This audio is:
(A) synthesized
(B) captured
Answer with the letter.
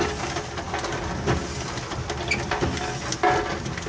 B